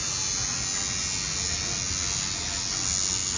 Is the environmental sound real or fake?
real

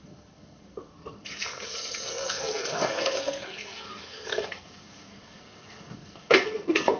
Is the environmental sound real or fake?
fake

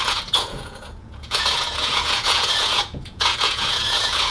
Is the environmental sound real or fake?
fake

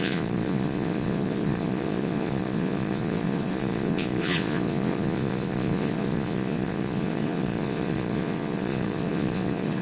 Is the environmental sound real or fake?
fake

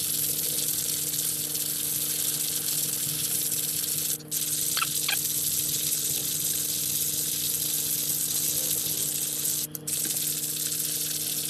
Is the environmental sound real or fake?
real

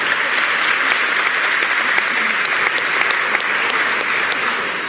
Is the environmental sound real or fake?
real